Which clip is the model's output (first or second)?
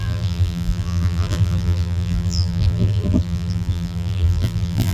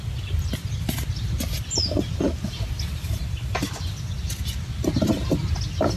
first